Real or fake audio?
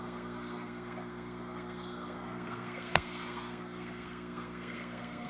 fake